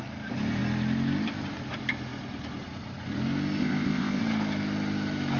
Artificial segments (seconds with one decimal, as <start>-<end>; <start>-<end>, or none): 3.6-4.2